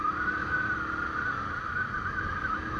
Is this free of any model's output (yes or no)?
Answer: yes